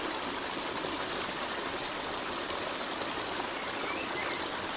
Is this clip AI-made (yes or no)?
no